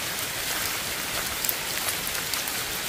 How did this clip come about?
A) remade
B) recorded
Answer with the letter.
B